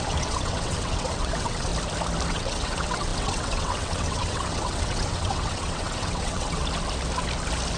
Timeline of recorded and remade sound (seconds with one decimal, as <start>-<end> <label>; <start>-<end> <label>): 0.0-1.7 remade; 1.7-2.3 recorded; 2.3-6.6 remade; 6.6-7.8 recorded